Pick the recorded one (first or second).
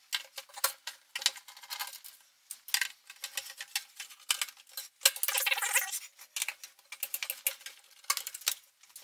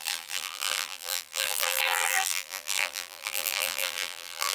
first